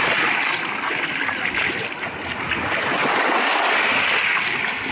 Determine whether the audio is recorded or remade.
recorded